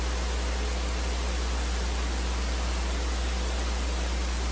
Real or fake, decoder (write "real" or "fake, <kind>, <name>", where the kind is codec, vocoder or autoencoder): real